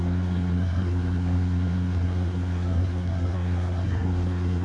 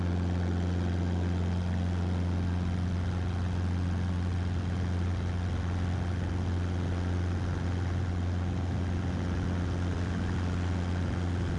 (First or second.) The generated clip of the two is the first